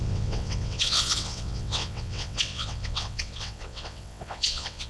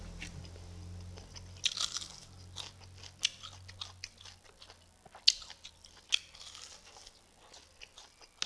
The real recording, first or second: second